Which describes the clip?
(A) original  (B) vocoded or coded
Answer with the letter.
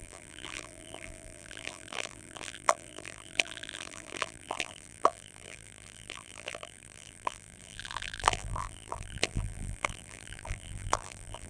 B